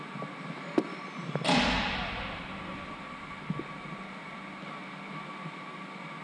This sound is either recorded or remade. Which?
recorded